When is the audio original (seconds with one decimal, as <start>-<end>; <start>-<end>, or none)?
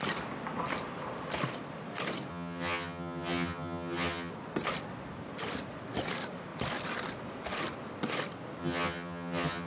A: 0.0-2.3; 4.3-8.6